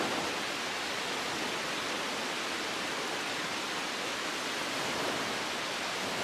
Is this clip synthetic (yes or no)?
no